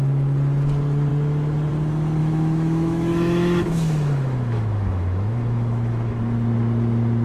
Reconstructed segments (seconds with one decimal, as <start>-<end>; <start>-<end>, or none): 2.2-6.2